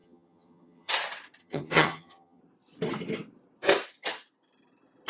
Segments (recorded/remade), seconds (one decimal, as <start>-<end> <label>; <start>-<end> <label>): 0.0-0.9 remade; 0.9-1.4 recorded; 1.4-2.4 remade; 2.4-5.1 recorded